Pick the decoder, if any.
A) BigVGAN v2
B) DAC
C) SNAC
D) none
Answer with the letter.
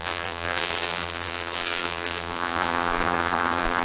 A